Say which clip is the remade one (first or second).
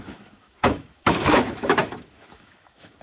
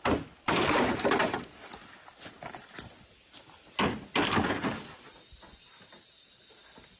first